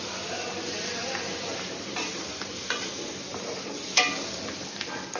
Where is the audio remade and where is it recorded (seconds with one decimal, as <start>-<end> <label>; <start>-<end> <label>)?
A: 0.0-1.0 recorded; 1.0-2.9 remade; 2.9-3.3 recorded; 3.3-4.0 remade; 4.0-5.2 recorded